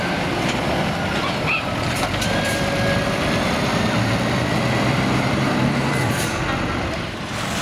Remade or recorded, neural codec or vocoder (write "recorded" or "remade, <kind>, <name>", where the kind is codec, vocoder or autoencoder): remade, vocoder, BigVGAN v2